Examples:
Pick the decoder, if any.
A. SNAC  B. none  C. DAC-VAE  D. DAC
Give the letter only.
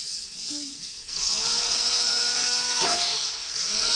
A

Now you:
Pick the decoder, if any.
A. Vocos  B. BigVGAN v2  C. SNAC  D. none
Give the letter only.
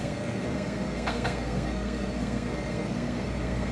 C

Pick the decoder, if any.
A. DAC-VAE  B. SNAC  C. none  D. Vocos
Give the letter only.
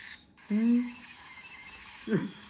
A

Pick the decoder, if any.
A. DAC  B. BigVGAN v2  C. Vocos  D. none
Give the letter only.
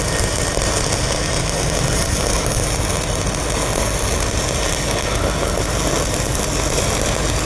D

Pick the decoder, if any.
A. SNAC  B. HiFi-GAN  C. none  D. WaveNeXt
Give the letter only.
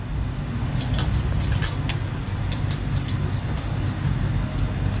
C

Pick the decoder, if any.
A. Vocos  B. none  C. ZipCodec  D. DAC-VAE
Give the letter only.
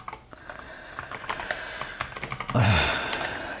B